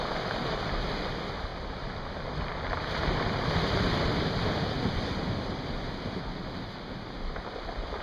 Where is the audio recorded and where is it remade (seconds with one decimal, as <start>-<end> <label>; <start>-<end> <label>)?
0.0-8.0 recorded